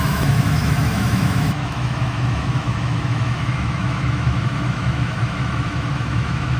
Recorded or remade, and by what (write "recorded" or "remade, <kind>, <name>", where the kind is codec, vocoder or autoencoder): remade, autoencoder, DAC-VAE